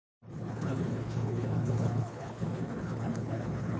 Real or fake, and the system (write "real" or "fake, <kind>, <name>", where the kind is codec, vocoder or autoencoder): fake, codec, HILCodec